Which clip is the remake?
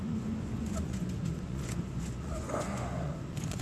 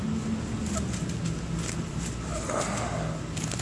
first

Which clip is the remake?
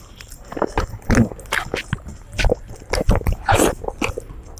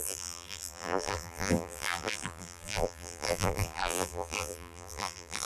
second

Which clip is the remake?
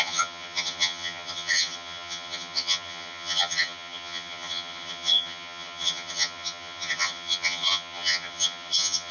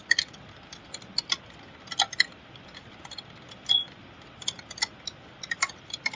first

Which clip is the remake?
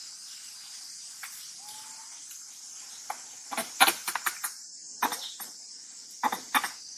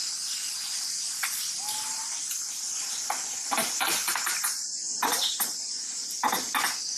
second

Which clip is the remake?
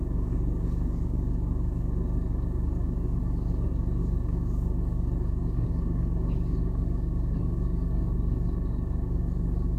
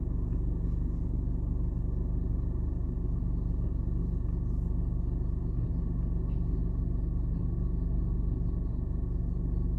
first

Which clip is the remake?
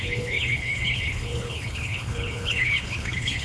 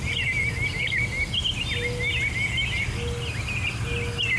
first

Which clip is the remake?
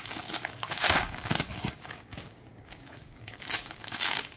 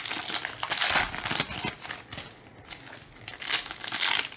first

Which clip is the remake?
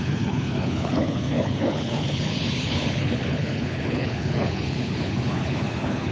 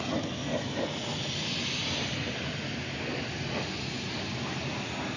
first